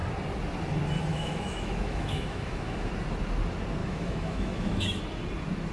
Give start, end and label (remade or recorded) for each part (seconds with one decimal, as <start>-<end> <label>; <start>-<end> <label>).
0.0-1.1 recorded; 1.1-2.9 remade; 2.9-3.8 recorded; 3.8-5.0 remade; 5.0-5.7 recorded